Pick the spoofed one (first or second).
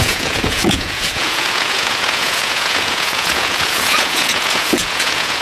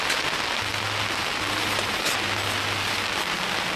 first